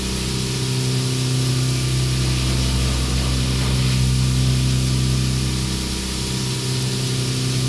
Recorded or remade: recorded